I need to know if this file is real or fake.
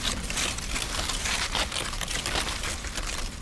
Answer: fake